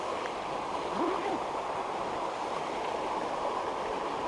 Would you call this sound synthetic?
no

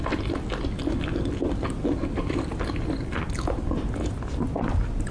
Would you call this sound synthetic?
no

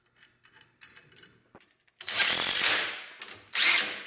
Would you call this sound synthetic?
no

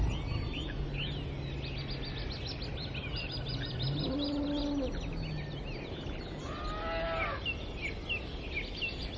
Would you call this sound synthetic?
no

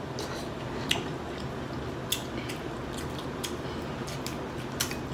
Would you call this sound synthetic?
no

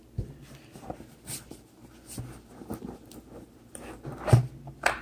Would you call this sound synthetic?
no